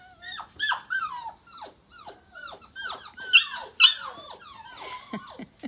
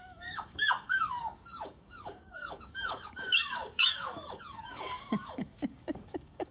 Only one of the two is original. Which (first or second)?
first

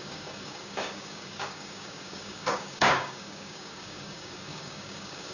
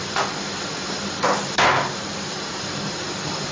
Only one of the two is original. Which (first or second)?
second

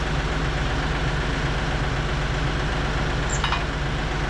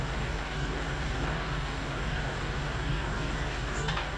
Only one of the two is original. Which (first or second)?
first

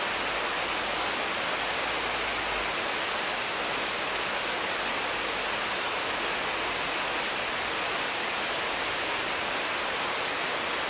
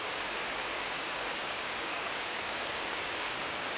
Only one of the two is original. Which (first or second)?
first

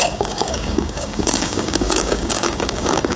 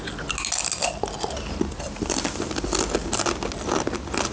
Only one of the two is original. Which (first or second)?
second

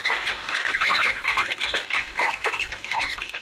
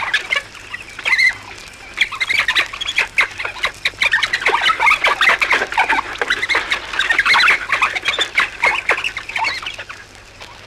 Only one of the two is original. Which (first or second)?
second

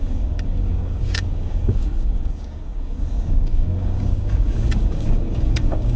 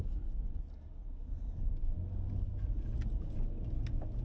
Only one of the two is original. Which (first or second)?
second